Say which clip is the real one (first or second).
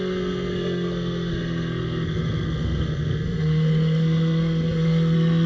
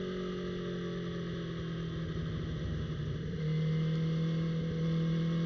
second